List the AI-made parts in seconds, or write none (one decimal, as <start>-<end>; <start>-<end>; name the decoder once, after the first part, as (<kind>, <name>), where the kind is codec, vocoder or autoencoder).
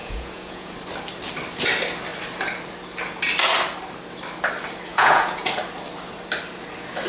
0.0-0.7 (vocoder, Vocos); 4.9-5.5